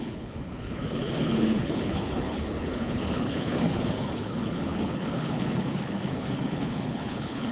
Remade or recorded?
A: remade